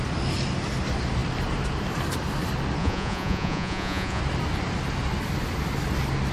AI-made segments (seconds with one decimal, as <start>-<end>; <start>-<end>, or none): 2.8-4.2